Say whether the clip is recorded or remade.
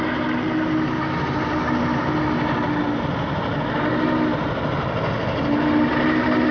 recorded